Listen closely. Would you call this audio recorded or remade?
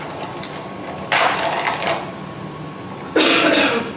recorded